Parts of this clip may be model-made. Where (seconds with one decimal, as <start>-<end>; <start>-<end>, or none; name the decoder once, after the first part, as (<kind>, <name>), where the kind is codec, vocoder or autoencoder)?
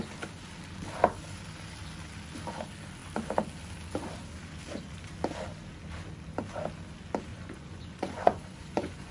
7.3-9.1 (vocoder, Vocos)